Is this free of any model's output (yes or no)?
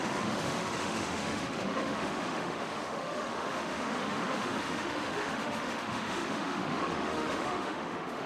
no